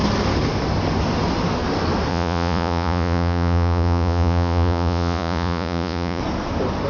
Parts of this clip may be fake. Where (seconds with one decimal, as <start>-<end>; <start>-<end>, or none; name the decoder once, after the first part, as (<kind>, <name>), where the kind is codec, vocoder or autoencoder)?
2.1-6.2 (vocoder, Vocos)